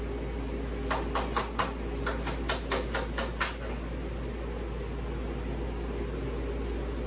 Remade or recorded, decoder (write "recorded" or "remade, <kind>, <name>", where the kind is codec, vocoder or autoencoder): recorded